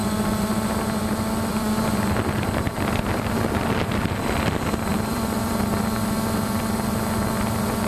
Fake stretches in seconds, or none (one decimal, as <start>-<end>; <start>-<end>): 0.0-0.5; 1.5-3.6; 4.9-6.6